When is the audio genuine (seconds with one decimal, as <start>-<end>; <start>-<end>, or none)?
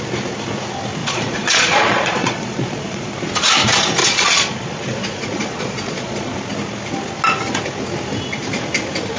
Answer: 0.0-1.0; 3.1-4.0; 6.3-9.2